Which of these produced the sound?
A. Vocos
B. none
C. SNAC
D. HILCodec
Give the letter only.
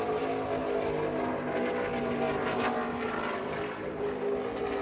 B